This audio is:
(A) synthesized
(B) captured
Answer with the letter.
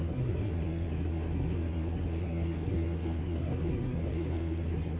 A